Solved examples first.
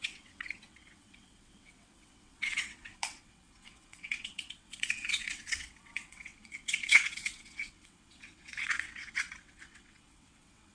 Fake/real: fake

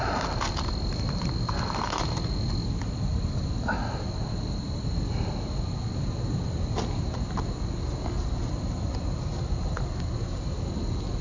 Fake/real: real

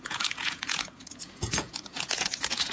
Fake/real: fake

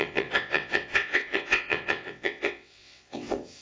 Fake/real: fake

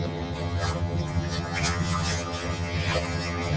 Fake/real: fake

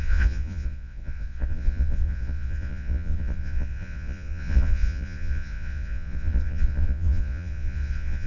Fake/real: fake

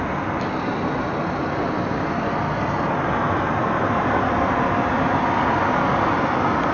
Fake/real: real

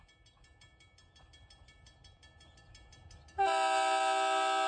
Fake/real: real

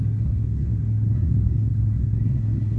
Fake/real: fake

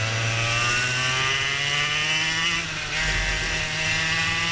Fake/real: real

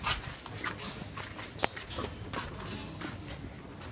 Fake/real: real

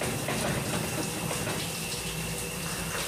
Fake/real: real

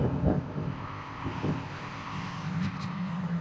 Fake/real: fake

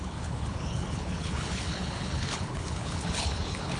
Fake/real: fake